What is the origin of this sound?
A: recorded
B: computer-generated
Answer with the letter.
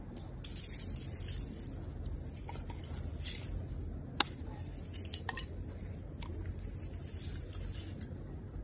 A